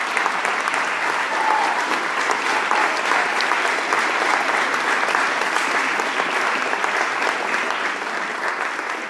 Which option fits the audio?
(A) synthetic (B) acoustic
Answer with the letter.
B